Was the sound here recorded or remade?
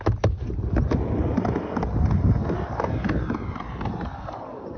recorded